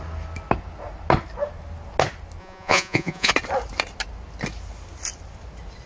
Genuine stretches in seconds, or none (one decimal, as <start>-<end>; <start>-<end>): 0.0-2.4; 3.3-5.9